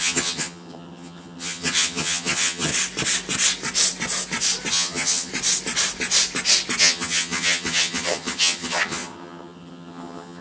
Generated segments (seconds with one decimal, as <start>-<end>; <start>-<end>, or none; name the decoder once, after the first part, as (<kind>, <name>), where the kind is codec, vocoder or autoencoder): 0.0-2.7 (vocoder, HiFi-GAN); 4.7-5.3; 6.8-10.4